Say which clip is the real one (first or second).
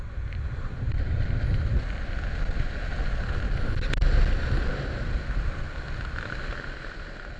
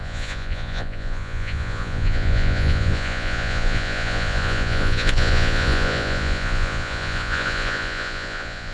first